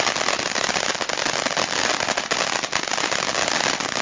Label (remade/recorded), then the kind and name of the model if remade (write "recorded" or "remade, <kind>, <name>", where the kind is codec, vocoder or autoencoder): recorded